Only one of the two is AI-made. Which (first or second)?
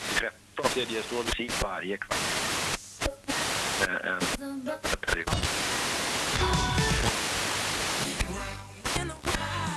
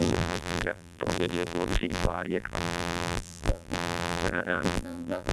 second